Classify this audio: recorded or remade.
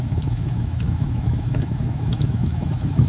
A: remade